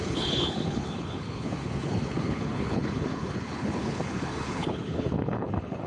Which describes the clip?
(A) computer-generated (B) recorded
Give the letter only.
A